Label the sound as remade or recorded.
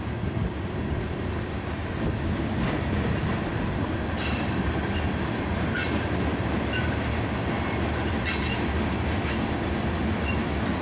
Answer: recorded